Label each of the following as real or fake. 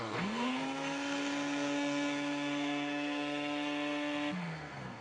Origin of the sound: fake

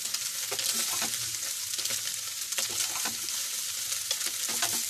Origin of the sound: real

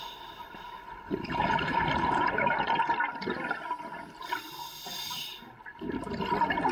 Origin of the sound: real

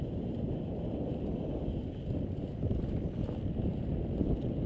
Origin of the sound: real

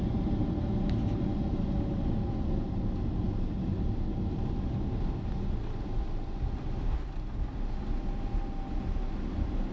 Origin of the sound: real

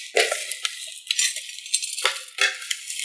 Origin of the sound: real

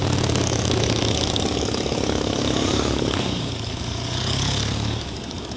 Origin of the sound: fake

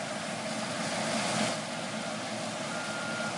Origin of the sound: real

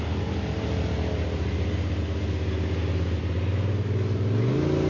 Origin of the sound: real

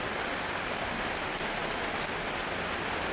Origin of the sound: real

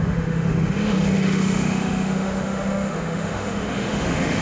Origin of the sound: fake